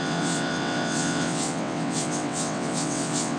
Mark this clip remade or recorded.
remade